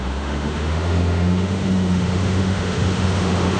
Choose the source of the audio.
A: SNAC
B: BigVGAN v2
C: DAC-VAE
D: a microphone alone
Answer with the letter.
C